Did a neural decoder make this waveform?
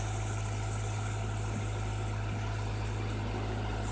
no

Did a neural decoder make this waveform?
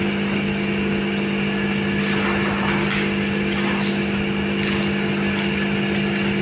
no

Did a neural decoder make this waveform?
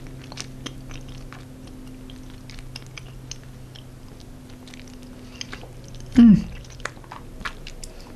no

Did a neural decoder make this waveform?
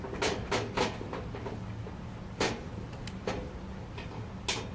no